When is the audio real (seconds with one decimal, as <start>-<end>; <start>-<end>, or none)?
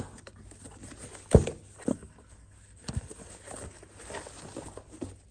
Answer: 0.0-1.9; 3.3-5.3